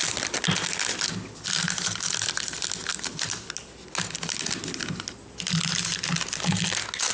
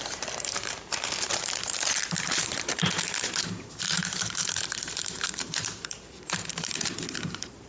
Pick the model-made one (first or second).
second